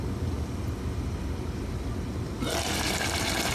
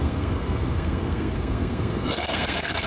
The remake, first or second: second